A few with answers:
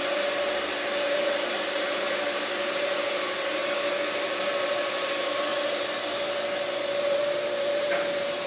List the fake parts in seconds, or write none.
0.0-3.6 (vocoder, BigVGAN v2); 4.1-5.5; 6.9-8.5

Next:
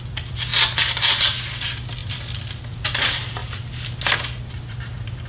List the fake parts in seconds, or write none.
0.0-0.5 (vocoder, BigVGAN v2); 1.6-3.4; 4.5-5.3

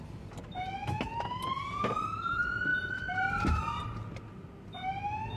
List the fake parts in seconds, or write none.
none

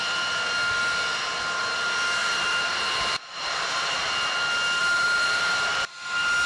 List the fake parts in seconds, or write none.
2.2-4.1 (vocoder, BigVGAN v2); 4.8-5.4

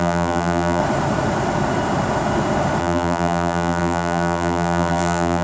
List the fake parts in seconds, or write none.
0.0-0.8 (vocoder, BigVGAN v2); 2.8-5.4